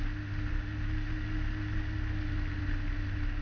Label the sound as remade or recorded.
recorded